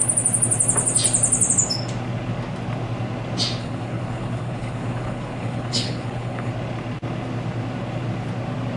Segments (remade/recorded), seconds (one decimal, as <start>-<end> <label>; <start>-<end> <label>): 0.0-3.6 recorded; 3.6-6.5 remade; 6.5-8.8 recorded